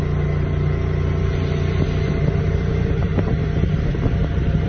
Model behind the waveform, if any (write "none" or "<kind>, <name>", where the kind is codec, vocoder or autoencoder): none